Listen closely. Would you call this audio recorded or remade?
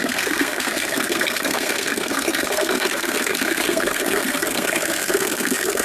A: remade